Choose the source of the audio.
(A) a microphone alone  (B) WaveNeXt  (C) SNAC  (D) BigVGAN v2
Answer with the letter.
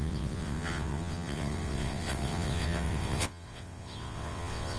B